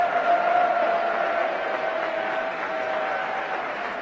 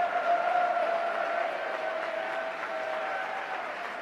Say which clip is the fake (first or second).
second